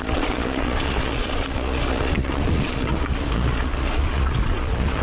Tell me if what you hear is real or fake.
fake